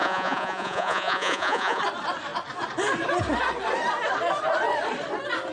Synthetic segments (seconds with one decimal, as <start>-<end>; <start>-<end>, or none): 0.0-1.8